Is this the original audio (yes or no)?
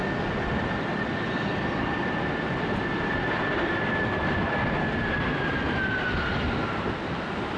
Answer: yes